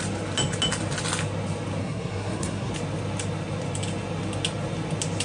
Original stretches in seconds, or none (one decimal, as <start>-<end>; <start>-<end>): 0.0-1.8; 2.7-5.2

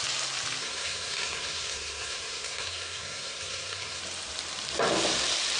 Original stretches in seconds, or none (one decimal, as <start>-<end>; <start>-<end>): 0.0-0.6; 4.0-5.6

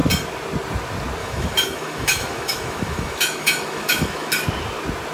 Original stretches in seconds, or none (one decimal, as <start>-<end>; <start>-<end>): 0.0-1.2; 4.3-5.1